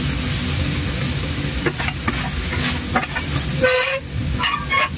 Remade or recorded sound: recorded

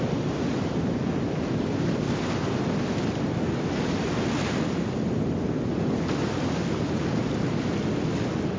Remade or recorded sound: recorded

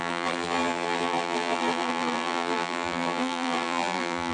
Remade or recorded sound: remade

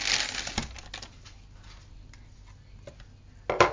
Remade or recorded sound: recorded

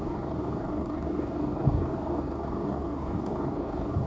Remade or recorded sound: remade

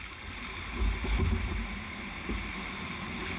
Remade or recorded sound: recorded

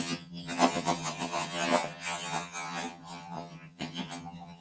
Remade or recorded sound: remade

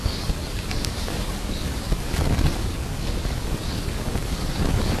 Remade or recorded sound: remade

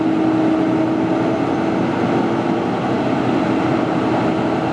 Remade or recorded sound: recorded